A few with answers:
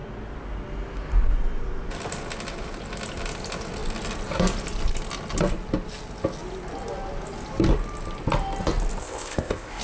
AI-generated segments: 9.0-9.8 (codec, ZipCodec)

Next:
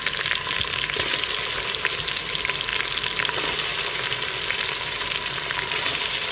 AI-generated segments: none

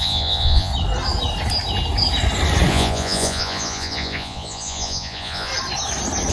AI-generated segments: 0.0-0.7 (vocoder, Vocos); 2.7-5.5

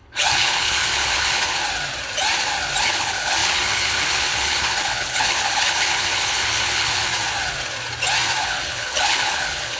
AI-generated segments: 0.0-1.6 (codec, HILCodec); 2.8-7.1; 8.4-9.8